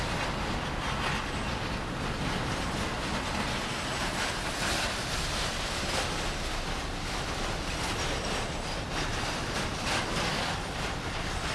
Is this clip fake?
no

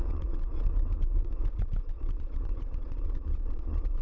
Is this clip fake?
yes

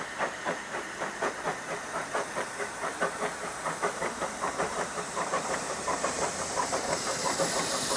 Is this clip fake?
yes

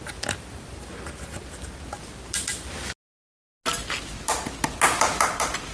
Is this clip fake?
no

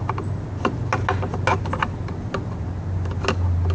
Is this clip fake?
no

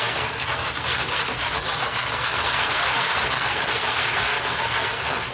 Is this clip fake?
yes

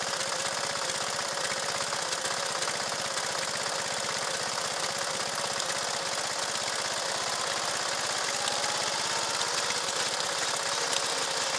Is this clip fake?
no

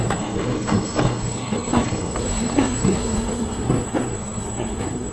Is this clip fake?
yes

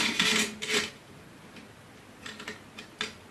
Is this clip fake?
no